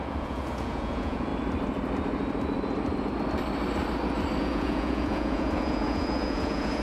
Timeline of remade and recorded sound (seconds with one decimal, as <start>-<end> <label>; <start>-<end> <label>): 0.0-1.3 remade; 1.3-4.4 recorded; 4.4-6.8 remade